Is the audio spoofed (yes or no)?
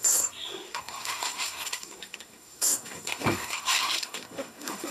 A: yes